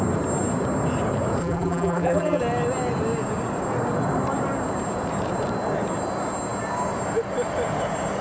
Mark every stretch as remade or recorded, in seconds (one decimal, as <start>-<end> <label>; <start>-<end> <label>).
0.0-1.4 recorded; 1.4-2.4 remade; 2.4-8.2 recorded